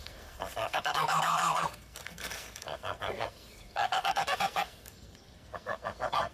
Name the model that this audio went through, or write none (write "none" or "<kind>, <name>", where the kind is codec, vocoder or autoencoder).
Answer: codec, SNAC